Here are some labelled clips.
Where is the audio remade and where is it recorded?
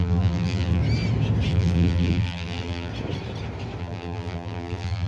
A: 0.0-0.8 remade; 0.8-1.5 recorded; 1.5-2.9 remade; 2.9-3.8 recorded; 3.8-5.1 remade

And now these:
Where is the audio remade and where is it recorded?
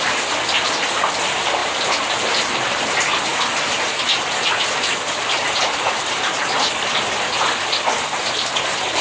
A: 0.0-9.0 recorded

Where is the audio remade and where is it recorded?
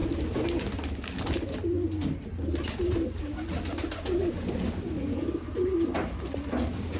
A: 0.0-7.0 recorded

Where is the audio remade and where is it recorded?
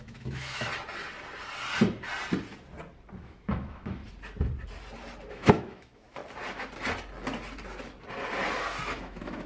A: 0.0-0.7 remade; 0.7-3.2 recorded; 3.2-4.0 remade; 4.0-5.3 recorded; 5.3-6.2 remade; 6.2-9.0 recorded; 9.0-9.5 remade